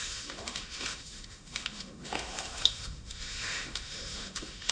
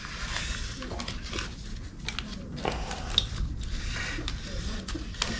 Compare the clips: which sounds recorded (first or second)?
second